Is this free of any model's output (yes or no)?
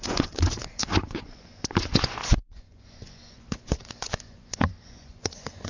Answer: no